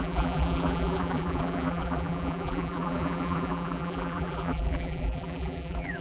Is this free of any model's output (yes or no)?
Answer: no